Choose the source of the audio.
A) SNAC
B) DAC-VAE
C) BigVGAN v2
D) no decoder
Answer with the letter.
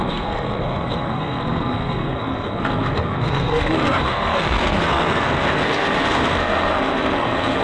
A